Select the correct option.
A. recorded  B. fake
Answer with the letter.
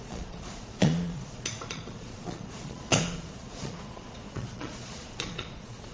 B